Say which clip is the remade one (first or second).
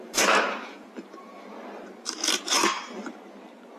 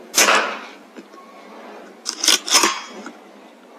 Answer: first